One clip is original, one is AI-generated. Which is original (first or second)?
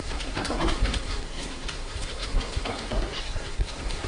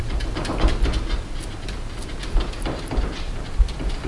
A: second